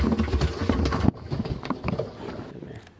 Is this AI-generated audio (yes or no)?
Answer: no